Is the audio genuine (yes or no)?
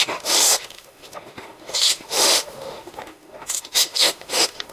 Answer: no